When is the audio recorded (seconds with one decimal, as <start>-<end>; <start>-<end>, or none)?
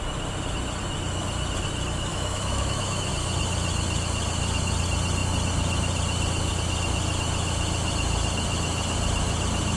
0.0-2.1; 3.1-9.8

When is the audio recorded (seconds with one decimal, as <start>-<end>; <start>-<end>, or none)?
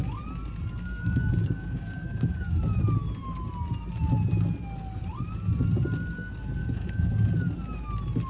0.0-0.9; 2.6-6.6; 7.3-8.3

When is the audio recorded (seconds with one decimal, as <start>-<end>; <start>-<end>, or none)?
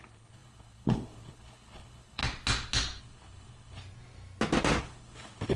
2.2-3.0; 3.8-4.8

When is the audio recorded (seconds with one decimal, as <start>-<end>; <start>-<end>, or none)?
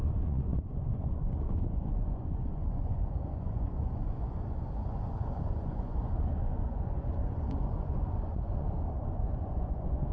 none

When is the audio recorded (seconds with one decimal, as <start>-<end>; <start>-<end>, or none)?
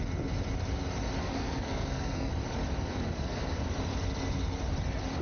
0.0-1.2; 2.3-2.9; 3.6-5.2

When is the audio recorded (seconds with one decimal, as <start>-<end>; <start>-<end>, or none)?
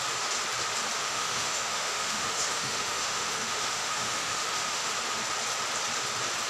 0.0-1.0; 4.9-6.5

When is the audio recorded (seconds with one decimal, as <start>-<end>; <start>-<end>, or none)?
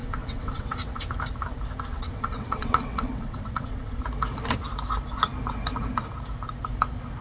1.0-1.9; 4.0-7.2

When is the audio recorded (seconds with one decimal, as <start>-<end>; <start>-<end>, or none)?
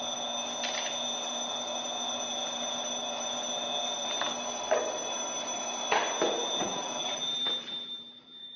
0.0-6.6